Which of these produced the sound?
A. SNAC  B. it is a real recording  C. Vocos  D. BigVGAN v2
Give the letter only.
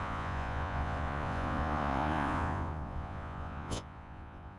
C